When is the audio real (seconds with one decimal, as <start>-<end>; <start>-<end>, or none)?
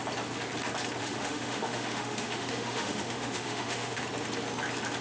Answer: 0.0-1.0; 4.0-5.0